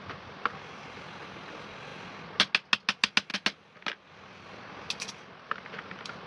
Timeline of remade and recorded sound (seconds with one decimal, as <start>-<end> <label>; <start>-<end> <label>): 0.0-6.3 recorded